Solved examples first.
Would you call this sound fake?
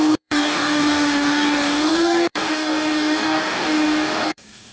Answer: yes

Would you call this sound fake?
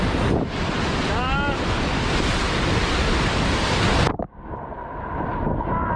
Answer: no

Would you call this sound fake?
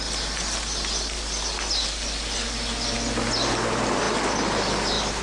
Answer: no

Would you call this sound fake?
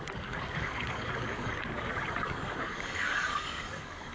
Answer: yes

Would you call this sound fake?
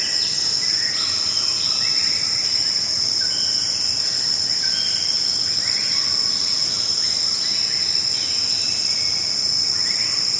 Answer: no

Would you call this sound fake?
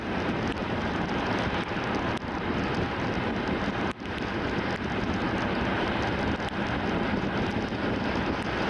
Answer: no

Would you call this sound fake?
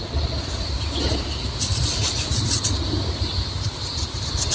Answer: no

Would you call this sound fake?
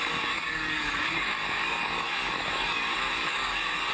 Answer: yes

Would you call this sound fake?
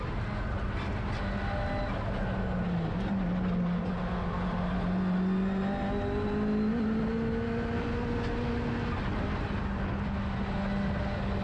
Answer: no